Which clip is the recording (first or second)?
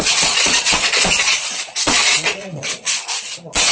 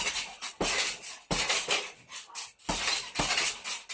second